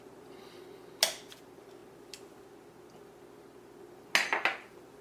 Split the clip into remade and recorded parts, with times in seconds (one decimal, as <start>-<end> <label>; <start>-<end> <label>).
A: 0.0-5.0 recorded